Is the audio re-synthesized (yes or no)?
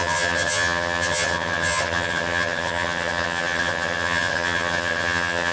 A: yes